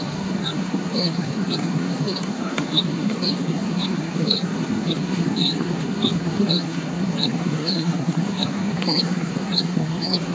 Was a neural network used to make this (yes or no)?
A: yes